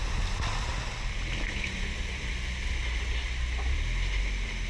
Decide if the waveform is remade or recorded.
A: recorded